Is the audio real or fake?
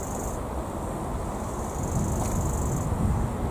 real